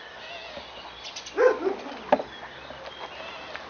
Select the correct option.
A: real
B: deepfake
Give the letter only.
A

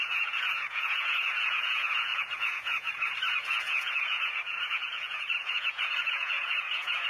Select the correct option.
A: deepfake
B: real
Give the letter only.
A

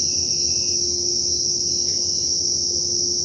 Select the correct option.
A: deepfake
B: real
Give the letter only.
B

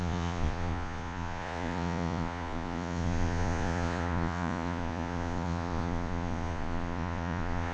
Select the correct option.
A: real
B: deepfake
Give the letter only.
B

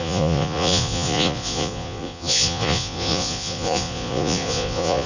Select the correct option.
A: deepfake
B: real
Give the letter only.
A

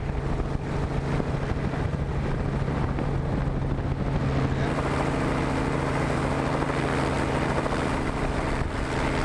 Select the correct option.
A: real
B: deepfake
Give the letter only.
A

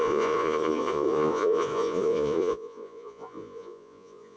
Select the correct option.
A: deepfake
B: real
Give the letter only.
A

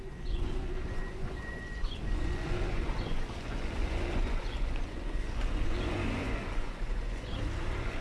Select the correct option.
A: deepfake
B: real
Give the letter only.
A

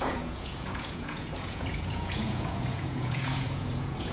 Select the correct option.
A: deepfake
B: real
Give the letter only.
A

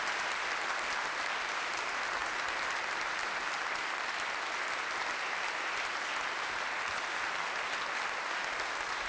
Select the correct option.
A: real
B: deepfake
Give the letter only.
A